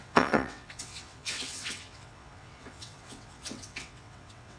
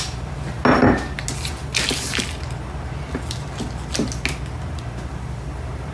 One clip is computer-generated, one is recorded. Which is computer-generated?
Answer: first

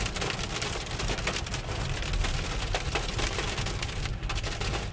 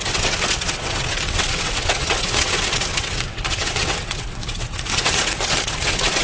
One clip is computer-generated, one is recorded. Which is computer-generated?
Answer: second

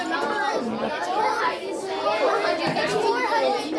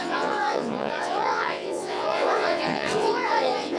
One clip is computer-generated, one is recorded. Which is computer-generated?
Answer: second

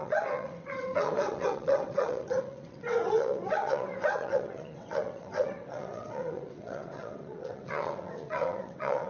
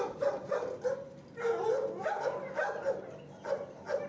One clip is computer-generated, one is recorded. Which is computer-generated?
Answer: first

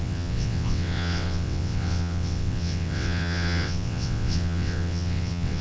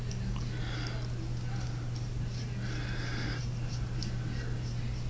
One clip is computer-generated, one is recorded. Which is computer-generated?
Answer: first